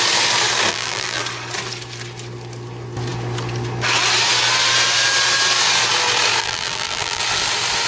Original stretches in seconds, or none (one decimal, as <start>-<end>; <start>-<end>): 0.0-0.7; 1.2-6.4; 7.2-7.9